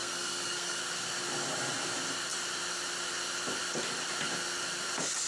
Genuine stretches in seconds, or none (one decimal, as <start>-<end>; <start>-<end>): 0.8-5.3